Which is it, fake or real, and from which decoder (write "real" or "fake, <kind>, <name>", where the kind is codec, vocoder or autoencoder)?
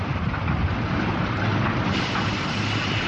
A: fake, vocoder, BigVGAN v2